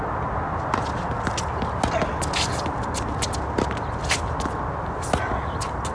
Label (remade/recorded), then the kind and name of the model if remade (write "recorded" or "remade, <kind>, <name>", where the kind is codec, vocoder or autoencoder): recorded